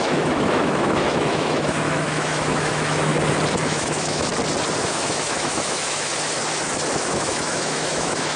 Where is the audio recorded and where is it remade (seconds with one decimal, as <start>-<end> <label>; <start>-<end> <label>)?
0.0-3.1 remade; 3.1-3.6 recorded; 3.6-4.3 remade; 4.3-4.8 recorded; 4.8-6.1 remade; 6.1-6.9 recorded; 6.9-8.4 remade